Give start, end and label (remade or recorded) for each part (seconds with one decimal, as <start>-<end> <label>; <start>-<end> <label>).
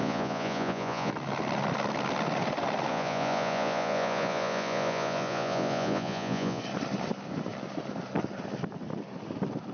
0.0-1.1 remade; 1.1-2.9 recorded; 2.9-6.6 remade; 6.6-9.7 recorded